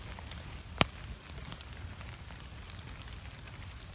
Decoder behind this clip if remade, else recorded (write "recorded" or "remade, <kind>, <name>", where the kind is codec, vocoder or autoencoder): recorded